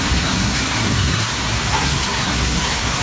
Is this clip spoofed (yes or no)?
yes